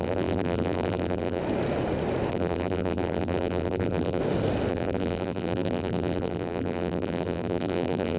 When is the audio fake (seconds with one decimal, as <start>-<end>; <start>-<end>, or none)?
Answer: 0.0-1.4; 2.3-4.2; 4.7-8.2